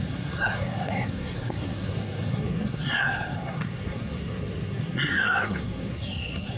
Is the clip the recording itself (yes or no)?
no